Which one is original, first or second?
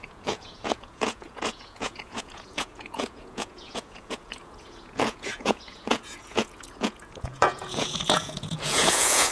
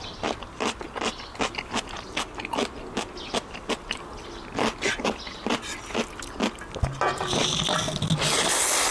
second